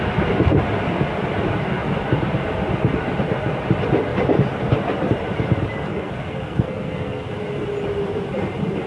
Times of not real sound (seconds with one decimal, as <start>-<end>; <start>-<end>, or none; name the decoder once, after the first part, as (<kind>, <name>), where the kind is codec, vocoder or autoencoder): 5.9-7.3 (codec, SNAC)